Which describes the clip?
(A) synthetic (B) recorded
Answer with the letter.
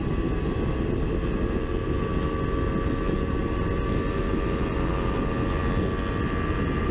B